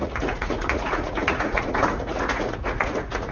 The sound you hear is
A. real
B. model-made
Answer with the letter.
B